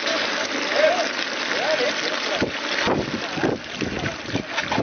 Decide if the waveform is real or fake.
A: real